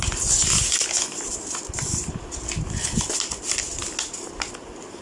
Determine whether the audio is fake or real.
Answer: real